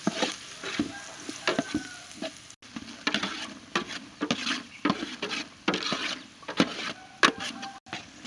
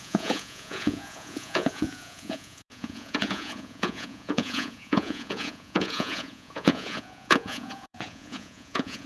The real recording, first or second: first